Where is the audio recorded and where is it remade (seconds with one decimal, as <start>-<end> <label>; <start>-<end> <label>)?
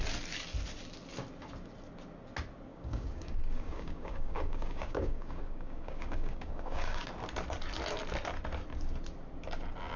0.0-2.7 recorded; 2.7-7.1 remade; 7.1-10.0 recorded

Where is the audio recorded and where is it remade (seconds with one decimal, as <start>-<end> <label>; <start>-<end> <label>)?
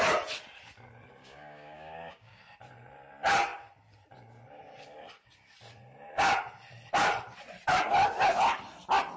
0.0-1.2 recorded; 1.2-2.4 remade; 2.4-9.2 recorded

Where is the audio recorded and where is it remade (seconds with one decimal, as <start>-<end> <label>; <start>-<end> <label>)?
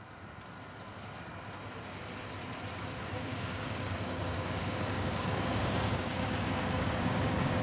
0.0-3.0 recorded; 3.0-7.6 remade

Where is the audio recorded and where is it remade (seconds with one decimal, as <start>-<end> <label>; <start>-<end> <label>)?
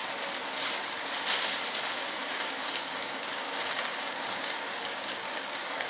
0.0-2.2 recorded; 2.2-5.9 remade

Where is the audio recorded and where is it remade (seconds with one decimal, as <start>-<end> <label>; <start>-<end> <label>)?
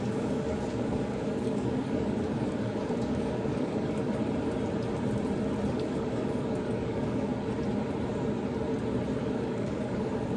0.0-4.2 remade; 4.2-5.7 recorded; 5.7-7.3 remade; 7.3-9.2 recorded; 9.2-10.4 remade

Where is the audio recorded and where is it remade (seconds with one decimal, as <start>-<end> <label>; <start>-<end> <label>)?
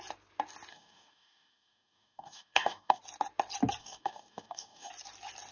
0.0-0.7 recorded; 0.7-3.0 remade; 3.0-3.8 recorded; 3.8-4.9 remade; 4.9-5.5 recorded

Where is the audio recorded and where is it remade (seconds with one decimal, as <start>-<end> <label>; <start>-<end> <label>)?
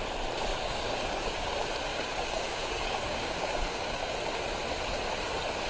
0.0-0.5 recorded; 0.5-1.5 remade; 1.5-1.9 recorded; 1.9-4.1 remade; 4.1-5.7 recorded